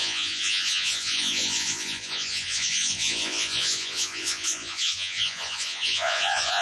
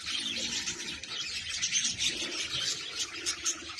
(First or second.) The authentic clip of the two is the second